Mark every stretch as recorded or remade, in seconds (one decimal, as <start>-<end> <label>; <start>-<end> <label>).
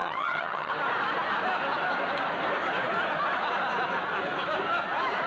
0.0-0.7 remade; 0.7-5.3 recorded